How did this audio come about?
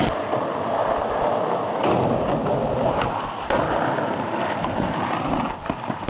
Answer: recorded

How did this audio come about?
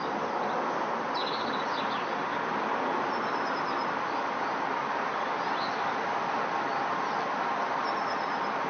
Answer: recorded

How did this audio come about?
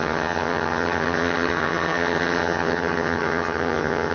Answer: remade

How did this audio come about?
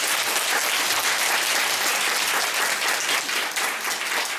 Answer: recorded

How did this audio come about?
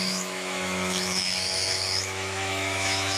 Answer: remade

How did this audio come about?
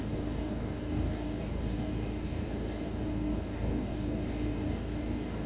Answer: remade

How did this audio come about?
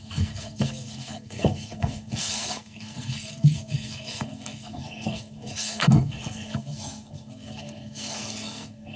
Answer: remade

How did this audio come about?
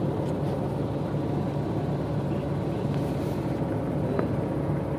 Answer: recorded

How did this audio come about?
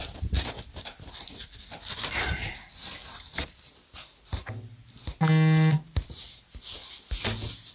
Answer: recorded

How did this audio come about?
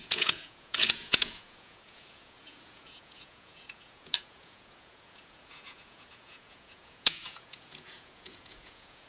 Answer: remade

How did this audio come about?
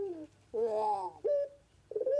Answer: remade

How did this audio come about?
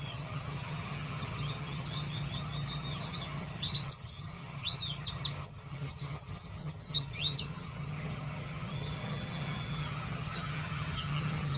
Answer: remade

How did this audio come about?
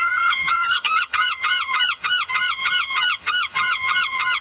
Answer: remade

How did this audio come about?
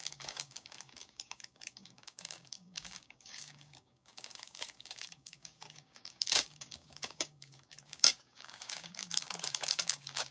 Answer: remade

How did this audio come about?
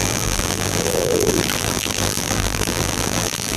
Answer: remade